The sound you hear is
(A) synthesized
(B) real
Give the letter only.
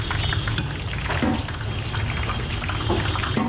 B